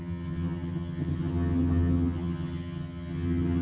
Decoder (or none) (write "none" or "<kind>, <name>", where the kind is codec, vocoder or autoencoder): vocoder, HiFi-GAN